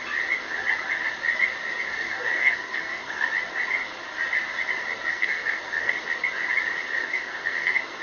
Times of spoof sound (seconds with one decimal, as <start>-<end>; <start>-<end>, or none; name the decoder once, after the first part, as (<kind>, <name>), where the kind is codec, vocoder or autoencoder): 1.9-3.3 (codec, SNAC); 5.1-6.0; 7.0-8.0